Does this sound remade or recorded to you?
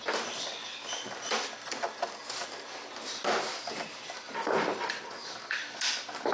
recorded